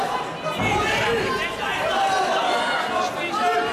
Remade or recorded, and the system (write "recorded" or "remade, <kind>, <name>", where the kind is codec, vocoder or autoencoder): recorded